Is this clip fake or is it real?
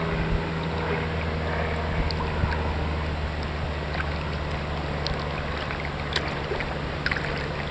real